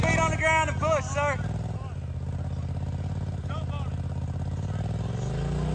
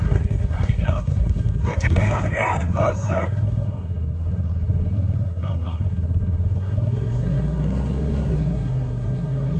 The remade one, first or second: second